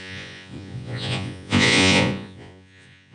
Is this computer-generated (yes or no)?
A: yes